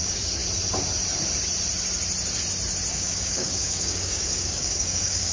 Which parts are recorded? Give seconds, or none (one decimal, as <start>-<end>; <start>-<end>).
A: 0.4-2.9